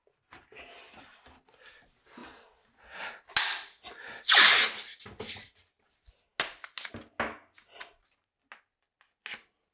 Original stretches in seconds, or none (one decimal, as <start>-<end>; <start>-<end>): 0.0-9.7

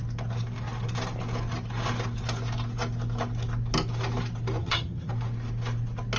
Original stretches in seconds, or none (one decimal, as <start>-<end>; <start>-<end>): 0.0-4.6; 5.1-6.2

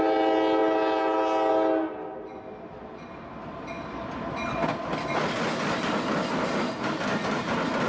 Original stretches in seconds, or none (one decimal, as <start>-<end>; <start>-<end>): 0.0-7.9